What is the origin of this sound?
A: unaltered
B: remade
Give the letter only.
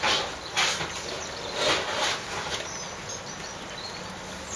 A